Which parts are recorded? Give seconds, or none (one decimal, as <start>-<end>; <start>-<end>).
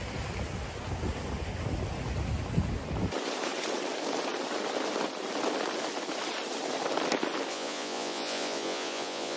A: 0.0-7.5